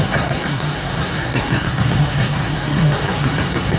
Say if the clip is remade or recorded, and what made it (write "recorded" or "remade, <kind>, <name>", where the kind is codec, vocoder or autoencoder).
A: remade, codec, SNAC